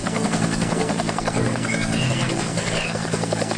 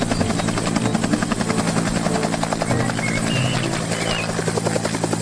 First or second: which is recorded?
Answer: second